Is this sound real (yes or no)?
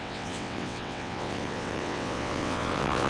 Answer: no